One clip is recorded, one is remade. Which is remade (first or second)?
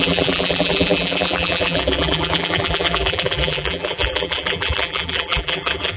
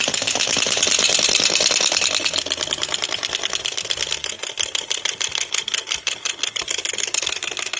first